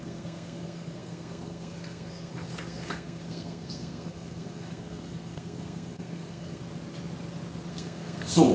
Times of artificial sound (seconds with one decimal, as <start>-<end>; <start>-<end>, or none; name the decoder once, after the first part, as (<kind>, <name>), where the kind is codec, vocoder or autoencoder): 0.0-6.6 (codec, SNAC); 7.7-8.5